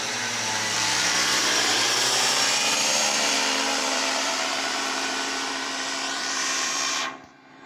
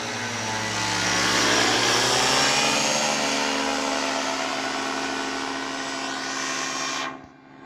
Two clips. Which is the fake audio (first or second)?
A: first